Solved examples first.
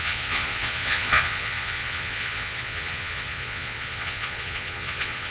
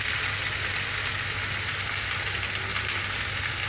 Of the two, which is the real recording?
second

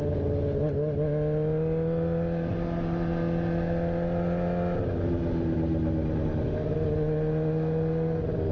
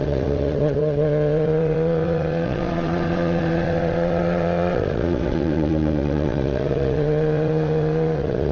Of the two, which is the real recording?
first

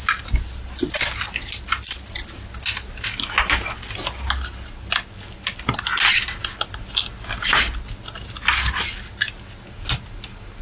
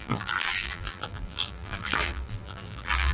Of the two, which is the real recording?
first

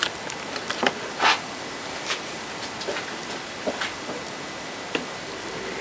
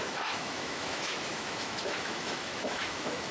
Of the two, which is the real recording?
first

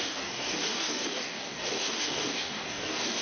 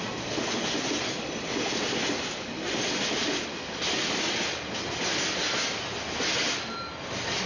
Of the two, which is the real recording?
second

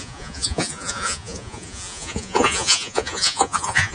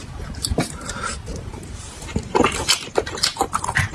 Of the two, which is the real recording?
second